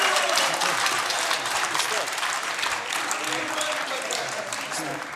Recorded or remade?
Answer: remade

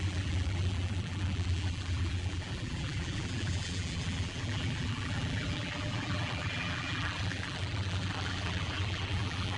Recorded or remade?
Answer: remade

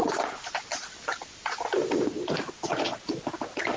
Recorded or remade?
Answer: recorded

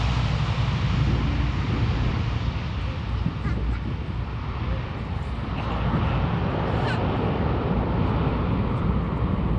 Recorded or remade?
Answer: recorded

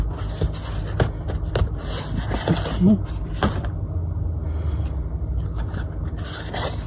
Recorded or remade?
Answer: recorded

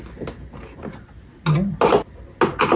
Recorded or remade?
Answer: recorded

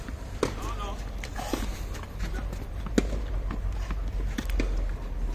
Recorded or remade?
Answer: recorded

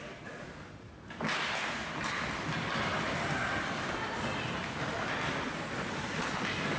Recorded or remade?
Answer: recorded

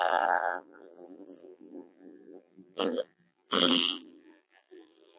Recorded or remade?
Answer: remade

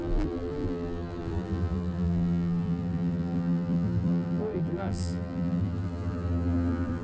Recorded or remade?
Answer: remade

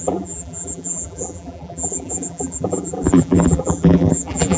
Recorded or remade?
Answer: remade